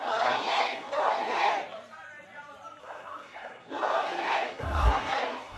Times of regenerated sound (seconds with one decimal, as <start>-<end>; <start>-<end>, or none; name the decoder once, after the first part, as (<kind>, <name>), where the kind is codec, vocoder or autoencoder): 0.0-1.5 (codec, SNAC); 2.8-5.6